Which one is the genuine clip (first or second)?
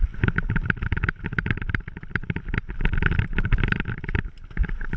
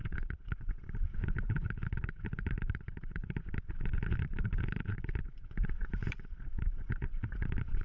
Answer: first